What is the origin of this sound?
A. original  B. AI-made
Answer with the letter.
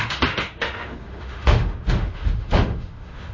B